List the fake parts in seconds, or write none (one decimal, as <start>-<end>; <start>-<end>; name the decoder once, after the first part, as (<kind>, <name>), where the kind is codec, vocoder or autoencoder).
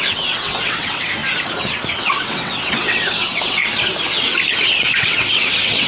0.0-1.2 (vocoder, WaveNeXt); 2.0-3.6; 4.7-5.9